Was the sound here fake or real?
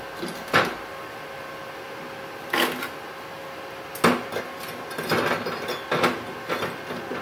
real